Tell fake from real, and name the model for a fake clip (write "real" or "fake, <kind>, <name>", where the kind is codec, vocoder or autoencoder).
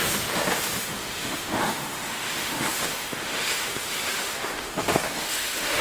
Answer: fake, autoencoder, DAC-VAE